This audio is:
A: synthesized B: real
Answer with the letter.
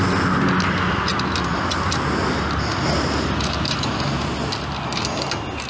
B